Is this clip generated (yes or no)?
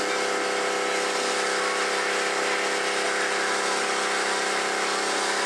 no